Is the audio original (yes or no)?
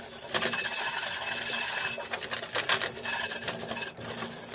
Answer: yes